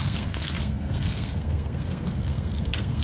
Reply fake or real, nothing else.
fake